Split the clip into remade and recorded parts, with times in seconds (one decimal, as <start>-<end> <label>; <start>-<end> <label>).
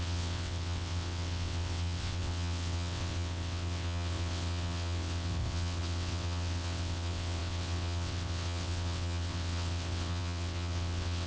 0.0-11.3 remade